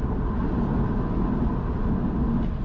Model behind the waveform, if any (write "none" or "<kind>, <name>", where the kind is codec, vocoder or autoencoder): none